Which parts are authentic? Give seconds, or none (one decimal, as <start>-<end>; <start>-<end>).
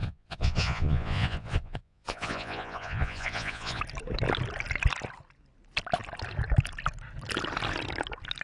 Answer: 3.8-8.4